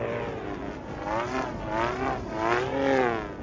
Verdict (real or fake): real